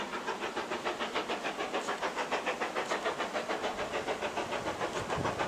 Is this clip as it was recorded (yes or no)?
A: no